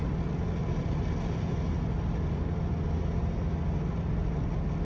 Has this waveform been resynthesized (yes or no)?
no